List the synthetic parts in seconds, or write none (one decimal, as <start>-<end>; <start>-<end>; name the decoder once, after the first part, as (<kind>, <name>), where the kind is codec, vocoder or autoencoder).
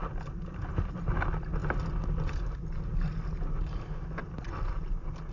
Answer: none